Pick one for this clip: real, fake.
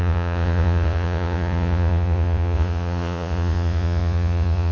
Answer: fake